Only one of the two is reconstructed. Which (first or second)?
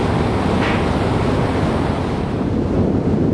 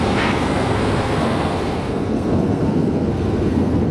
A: second